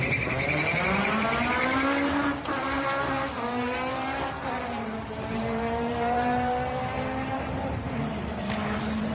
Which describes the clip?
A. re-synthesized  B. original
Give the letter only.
A